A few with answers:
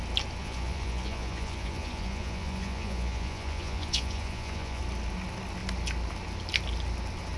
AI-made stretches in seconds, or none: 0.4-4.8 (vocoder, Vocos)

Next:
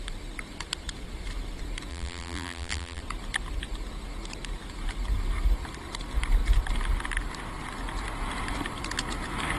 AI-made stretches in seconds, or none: 1.9-3.0 (vocoder, BigVGAN v2)

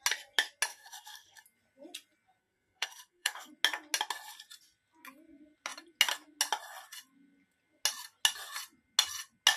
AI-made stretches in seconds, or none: 0.7-1.4 (codec, SNAC); 2.4-3.5

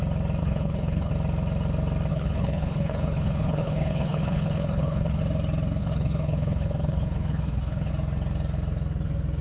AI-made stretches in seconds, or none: 0.4-1.1 (codec, HILCodec); 2.1-5.2; 5.8-7.9

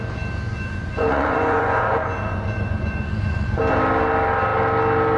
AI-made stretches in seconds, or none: 0.5-3.6 (vocoder, Vocos)